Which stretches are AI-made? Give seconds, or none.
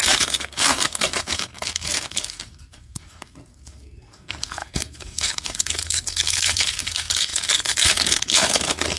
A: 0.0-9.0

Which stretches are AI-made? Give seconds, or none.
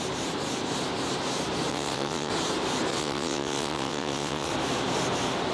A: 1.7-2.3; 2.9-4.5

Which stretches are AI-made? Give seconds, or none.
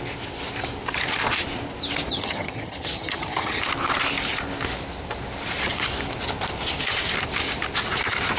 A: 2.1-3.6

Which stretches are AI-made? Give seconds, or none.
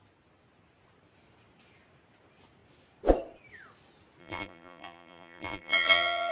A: 4.2-6.3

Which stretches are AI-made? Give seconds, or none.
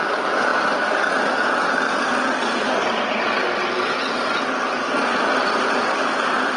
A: none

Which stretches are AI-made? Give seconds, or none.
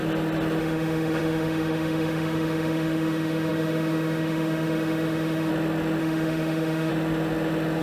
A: 0.6-5.5; 6.0-6.9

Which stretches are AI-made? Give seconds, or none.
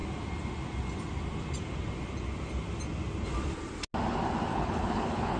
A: 4.5-5.4